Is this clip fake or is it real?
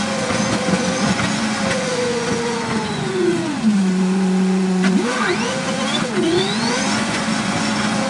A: fake